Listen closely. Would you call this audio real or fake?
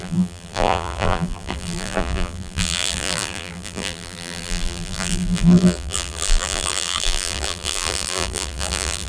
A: fake